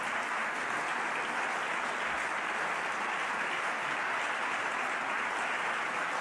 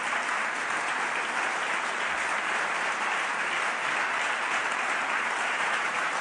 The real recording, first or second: first